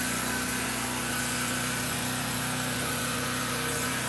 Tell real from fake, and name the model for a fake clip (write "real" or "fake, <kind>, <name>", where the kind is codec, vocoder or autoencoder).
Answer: fake, vocoder, Vocos